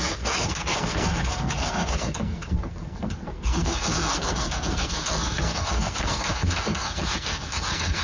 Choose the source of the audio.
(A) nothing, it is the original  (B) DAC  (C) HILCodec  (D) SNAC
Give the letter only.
D